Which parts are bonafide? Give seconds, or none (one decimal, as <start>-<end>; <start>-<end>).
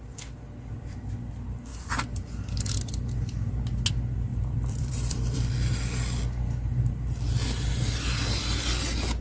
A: 0.0-4.3; 5.4-9.2